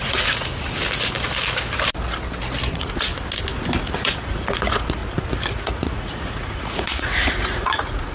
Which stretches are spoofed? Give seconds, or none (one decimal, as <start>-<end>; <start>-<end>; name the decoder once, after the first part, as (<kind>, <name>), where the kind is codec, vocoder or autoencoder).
0.0-0.8 (vocoder, Vocos); 2.7-3.1; 4.0-5.0; 5.5-8.1

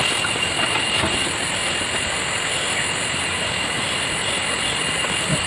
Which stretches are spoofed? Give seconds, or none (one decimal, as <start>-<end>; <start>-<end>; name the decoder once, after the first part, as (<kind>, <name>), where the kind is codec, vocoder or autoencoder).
none

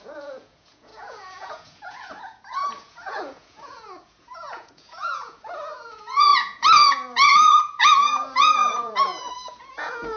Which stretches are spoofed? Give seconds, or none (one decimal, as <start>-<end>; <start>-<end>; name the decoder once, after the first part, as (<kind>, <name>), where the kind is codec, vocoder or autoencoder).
0.0-10.2 (vocoder, Vocos)

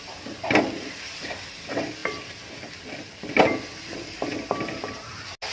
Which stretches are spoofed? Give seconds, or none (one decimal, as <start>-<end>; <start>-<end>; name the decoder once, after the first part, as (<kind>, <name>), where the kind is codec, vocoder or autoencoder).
none